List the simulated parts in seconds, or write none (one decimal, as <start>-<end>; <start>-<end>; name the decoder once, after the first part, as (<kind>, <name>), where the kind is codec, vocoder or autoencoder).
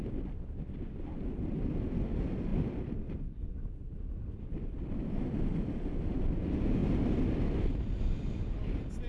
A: none